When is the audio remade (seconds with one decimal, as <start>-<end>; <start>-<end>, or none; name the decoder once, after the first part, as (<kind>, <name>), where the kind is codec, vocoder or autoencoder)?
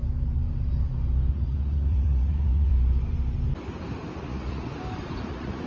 1.3-2.7 (vocoder, Vocos); 4.2-4.7; 5.3-5.7